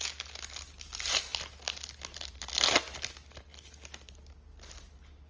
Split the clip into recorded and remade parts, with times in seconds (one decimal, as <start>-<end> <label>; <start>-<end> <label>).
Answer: 0.0-5.3 recorded